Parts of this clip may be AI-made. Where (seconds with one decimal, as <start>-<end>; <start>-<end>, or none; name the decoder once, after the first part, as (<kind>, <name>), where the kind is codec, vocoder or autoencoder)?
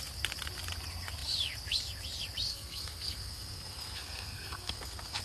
2.5-5.2 (codec, SNAC)